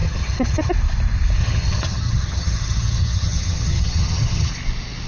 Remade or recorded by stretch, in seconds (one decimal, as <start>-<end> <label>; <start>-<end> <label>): 0.0-0.7 remade; 0.7-1.4 recorded; 1.4-4.5 remade; 4.5-5.1 recorded

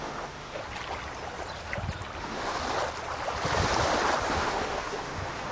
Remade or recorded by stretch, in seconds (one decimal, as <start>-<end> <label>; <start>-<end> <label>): 0.0-0.6 remade; 0.6-2.2 recorded; 2.2-2.6 remade; 2.6-4.3 recorded; 4.3-5.5 remade

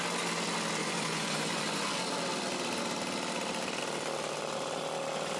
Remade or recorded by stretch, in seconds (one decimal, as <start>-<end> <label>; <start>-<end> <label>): 0.0-0.8 recorded; 0.8-1.6 remade; 1.6-5.4 recorded

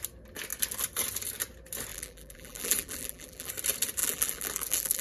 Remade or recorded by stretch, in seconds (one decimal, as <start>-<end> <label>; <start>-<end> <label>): 0.0-1.9 recorded; 1.9-3.5 remade; 3.5-4.0 recorded; 4.0-5.0 remade

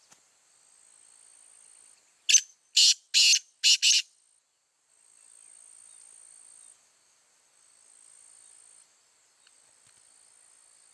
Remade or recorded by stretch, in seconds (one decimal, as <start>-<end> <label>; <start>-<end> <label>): 0.0-10.9 recorded

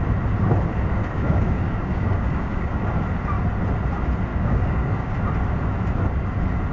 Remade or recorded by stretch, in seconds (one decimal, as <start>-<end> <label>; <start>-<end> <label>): 0.0-1.0 recorded; 1.0-2.8 remade; 2.8-4.3 recorded; 4.3-5.1 remade; 5.1-6.7 recorded

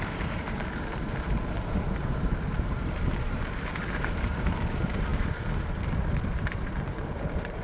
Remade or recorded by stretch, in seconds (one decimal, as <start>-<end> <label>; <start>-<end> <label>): 0.0-7.6 remade

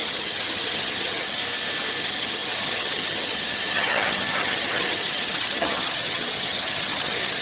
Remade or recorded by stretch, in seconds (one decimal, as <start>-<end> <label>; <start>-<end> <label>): 0.0-1.4 remade; 1.4-2.0 recorded; 2.0-7.4 remade